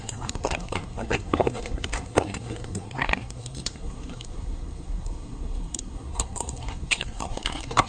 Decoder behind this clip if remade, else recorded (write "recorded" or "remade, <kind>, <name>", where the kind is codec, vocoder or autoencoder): remade, codec, SNAC